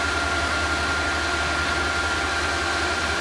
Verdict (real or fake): real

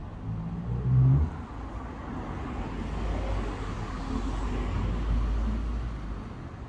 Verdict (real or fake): real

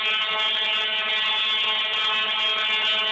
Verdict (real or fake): real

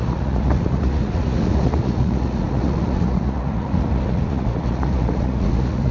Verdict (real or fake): fake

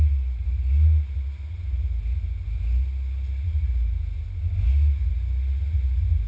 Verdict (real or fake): real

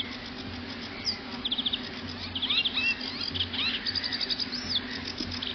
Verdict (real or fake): real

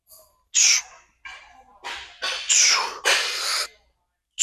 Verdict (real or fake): real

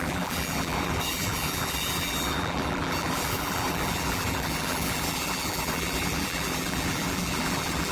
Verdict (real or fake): fake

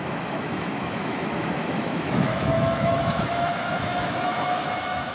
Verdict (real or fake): fake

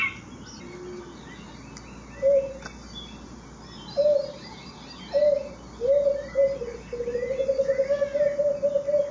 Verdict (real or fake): real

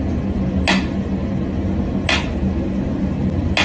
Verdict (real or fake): real